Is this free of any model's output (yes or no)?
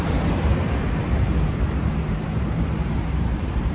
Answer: no